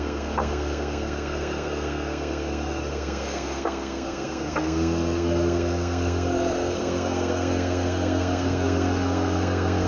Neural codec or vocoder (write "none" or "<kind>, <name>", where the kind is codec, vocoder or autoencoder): codec, SNAC